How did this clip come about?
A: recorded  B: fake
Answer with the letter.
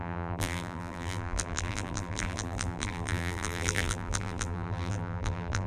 B